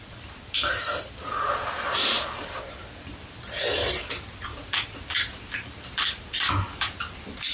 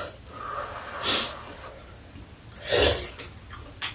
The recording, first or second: second